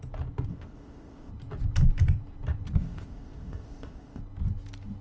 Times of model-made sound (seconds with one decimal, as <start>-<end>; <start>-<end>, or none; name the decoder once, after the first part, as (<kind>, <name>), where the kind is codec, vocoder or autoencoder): 0.5-1.3 (codec, ZipCodec); 2.8-4.2